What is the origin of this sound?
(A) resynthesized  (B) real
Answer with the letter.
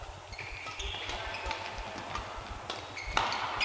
B